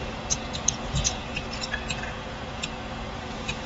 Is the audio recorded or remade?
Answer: remade